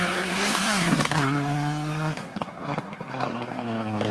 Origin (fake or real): fake